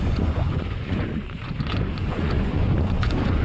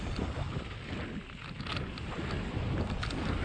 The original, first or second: second